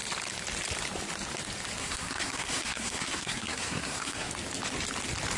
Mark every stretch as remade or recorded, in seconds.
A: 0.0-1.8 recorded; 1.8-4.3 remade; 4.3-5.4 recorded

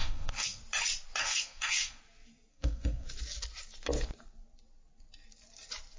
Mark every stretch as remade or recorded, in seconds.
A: 0.0-0.6 remade; 0.6-1.2 recorded; 1.2-2.0 remade; 2.0-2.5 recorded; 2.5-3.1 remade; 3.1-6.0 recorded

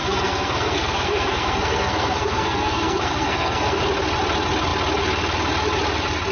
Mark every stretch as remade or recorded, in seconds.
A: 0.0-3.8 remade; 3.8-6.3 recorded

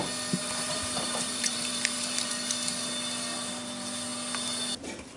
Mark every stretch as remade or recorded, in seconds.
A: 0.0-0.4 recorded; 0.4-2.3 remade; 2.3-5.2 recorded